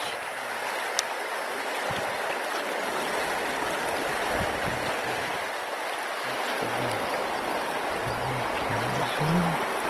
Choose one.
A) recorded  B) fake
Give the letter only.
A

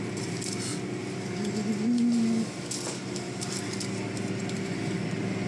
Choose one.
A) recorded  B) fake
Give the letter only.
A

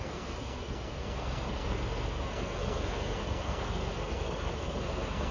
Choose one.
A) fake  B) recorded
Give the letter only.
A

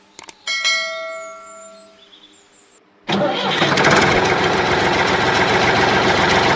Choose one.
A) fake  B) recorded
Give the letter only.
B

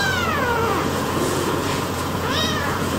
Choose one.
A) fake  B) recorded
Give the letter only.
A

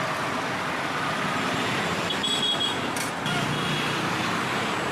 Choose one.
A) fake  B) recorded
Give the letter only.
B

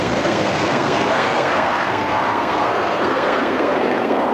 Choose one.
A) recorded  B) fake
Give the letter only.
B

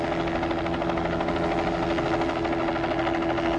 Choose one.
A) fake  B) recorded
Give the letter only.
B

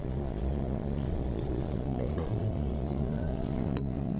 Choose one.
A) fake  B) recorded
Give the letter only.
A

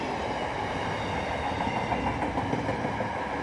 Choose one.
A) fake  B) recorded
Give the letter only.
B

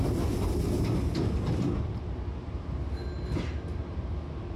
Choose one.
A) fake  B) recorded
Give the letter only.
B